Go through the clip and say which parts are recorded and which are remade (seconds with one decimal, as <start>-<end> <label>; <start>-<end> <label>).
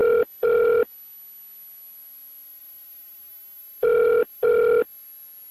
0.0-5.5 recorded